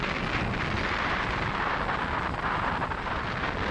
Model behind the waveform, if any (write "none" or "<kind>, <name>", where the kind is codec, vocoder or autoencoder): none